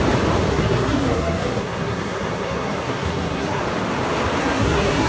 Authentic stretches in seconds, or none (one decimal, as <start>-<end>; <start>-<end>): 0.0-0.5; 3.6-4.4